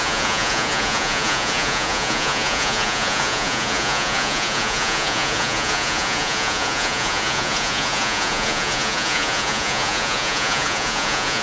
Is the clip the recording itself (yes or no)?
no